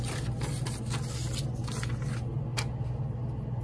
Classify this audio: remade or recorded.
recorded